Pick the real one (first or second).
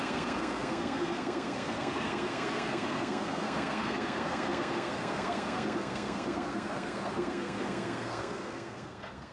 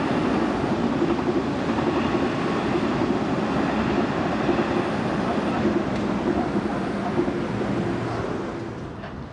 second